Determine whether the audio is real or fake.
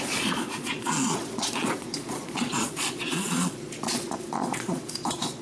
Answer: fake